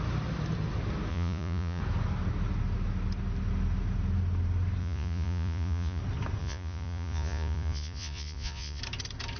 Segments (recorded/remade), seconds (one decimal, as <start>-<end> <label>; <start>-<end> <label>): 0.0-1.1 recorded; 1.1-1.8 remade; 1.8-4.8 recorded; 4.8-6.0 remade; 6.0-6.4 recorded; 6.4-8.8 remade; 8.8-9.4 recorded